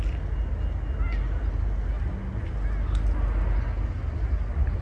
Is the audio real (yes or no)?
yes